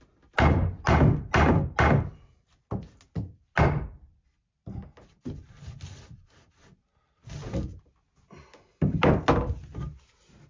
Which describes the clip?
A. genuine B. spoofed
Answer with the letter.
A